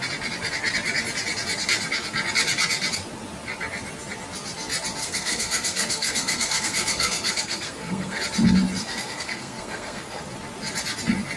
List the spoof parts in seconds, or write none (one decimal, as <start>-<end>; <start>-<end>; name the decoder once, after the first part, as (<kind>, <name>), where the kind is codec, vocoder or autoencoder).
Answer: 5.0-8.2 (codec, SNAC); 8.8-10.2